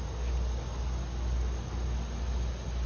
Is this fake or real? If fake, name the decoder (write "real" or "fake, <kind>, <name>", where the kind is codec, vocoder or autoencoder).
real